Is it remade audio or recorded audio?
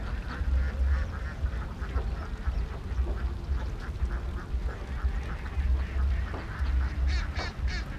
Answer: recorded